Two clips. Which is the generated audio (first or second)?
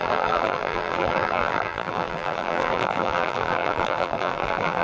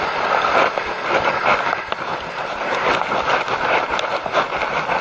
first